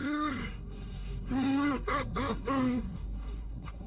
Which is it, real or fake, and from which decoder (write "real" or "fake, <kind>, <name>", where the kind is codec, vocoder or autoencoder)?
fake, codec, SNAC